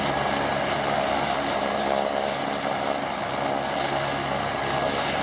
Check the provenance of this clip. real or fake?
real